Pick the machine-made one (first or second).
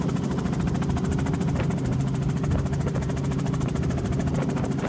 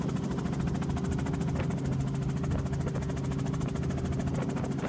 first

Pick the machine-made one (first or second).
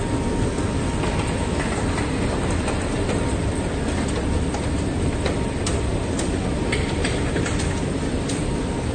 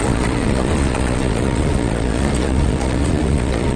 second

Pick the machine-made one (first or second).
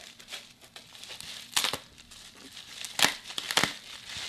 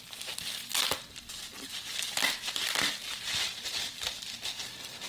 second